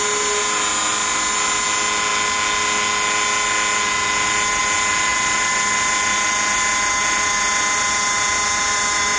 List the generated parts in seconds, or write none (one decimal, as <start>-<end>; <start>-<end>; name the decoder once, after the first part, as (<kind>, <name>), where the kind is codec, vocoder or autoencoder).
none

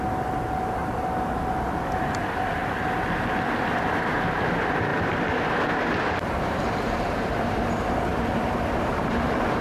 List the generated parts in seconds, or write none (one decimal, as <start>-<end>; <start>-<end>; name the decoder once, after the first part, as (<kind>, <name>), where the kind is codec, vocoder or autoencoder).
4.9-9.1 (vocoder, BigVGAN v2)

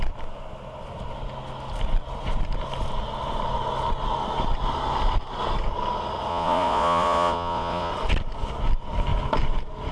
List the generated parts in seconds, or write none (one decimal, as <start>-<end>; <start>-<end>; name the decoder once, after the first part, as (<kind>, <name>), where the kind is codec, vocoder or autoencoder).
6.3-7.9 (vocoder, Vocos)

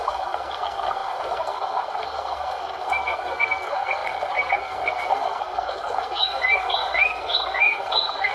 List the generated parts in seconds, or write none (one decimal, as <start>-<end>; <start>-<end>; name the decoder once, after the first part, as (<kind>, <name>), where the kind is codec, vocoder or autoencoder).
0.0-8.3 (codec, SNAC)

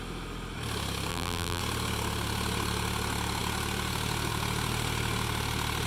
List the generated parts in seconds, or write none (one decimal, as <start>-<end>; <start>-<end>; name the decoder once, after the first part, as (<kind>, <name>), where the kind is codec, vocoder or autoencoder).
1.1-1.6 (vocoder, BigVGAN v2)

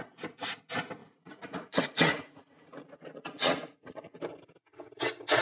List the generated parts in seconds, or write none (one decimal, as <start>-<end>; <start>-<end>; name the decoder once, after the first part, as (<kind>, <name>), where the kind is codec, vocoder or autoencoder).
1.0-4.2 (vocoder, Vocos)

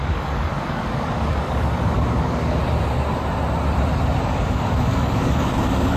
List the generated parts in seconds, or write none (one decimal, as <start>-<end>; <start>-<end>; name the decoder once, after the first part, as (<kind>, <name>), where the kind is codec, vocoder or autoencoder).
0.0-2.6 (codec, DAC); 4.2-6.0

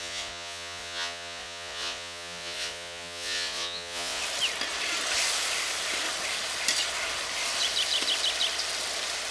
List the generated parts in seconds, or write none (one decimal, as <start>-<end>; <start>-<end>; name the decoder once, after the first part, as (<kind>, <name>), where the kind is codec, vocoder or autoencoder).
0.0-4.2 (vocoder, Vocos)